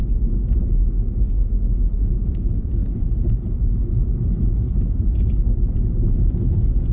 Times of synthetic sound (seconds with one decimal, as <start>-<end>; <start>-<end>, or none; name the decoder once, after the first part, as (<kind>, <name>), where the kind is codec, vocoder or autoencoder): 2.3-2.8 (autoencoder, DAC-VAE)